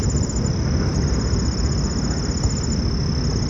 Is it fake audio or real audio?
real